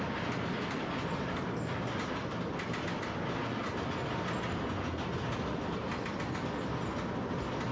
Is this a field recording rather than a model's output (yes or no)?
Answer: yes